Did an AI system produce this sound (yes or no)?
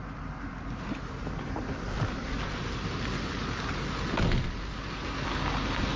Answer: no